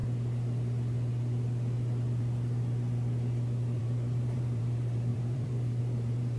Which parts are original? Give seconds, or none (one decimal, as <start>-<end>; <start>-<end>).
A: 0.0-3.8